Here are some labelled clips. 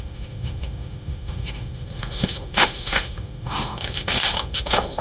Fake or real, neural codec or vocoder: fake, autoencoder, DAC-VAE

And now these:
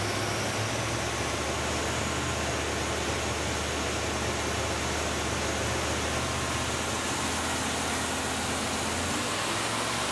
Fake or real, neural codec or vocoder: real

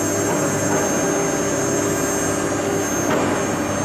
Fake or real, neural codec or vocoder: real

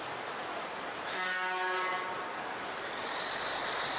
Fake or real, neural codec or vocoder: real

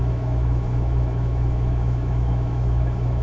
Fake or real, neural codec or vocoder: fake, autoencoder, DAC-VAE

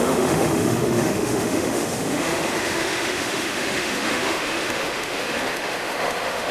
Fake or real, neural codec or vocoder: fake, autoencoder, DAC-VAE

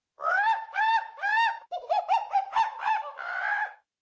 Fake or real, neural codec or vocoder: fake, autoencoder, DAC-VAE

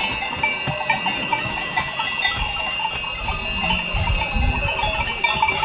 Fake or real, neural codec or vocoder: real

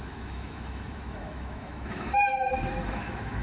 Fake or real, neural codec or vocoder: fake, autoencoder, DAC-VAE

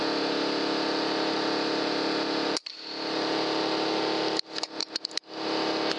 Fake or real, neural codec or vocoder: real